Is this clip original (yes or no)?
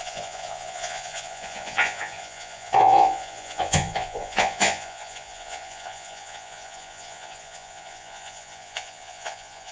no